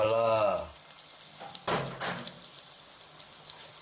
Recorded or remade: recorded